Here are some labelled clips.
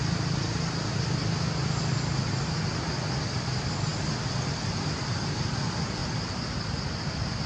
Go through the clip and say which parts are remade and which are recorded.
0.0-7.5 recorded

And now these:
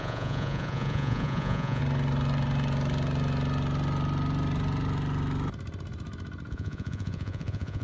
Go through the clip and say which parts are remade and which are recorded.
0.0-1.8 remade; 1.8-6.5 recorded; 6.5-7.8 remade

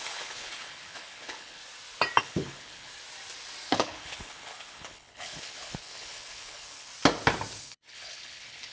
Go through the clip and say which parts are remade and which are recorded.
0.0-1.6 remade; 1.6-2.2 recorded; 2.2-2.9 remade; 2.9-3.7 recorded; 3.7-6.9 remade; 6.9-7.6 recorded; 7.6-8.7 remade

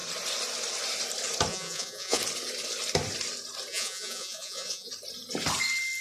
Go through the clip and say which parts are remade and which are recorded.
0.0-1.5 recorded; 1.5-2.2 remade; 2.2-3.7 recorded; 3.7-4.9 remade; 4.9-6.0 recorded